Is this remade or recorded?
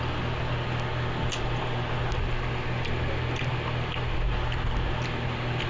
recorded